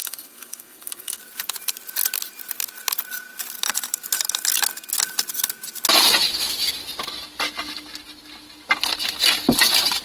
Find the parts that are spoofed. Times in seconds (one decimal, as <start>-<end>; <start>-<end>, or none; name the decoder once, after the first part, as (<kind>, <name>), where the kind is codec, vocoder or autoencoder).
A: 0.0-1.2 (codec, SNAC)

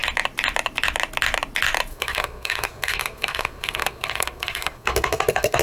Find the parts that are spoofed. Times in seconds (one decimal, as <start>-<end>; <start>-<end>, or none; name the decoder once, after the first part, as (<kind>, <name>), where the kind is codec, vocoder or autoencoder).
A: 1.9-5.6 (codec, SNAC)

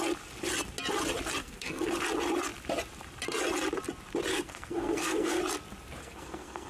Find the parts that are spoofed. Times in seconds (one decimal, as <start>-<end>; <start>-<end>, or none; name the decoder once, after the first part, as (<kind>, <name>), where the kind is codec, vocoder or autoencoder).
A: 1.4-1.9 (codec, SNAC); 4.3-5.4; 6.0-6.7

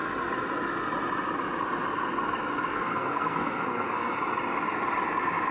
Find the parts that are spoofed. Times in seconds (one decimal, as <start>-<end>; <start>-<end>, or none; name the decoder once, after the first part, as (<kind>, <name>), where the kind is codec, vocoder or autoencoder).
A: 2.7-4.1 (codec, SNAC)